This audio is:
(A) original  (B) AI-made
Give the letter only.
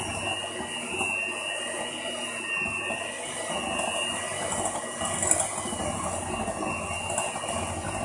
A